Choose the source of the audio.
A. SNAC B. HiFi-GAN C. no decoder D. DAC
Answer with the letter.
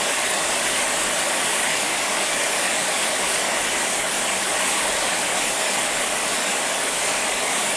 D